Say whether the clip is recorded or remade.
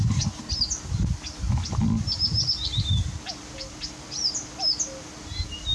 recorded